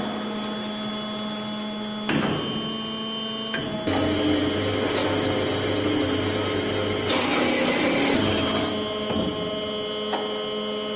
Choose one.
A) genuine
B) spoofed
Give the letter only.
A